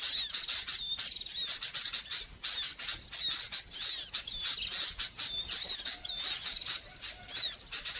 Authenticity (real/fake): real